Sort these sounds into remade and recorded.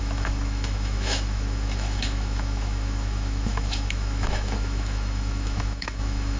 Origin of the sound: remade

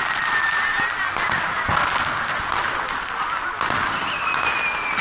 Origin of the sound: recorded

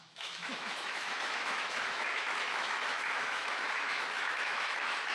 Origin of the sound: remade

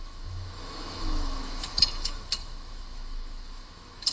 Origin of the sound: remade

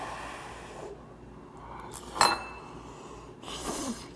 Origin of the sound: recorded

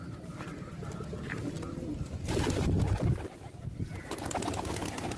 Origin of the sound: recorded